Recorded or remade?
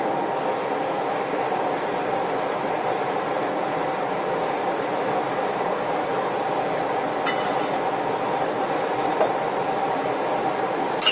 recorded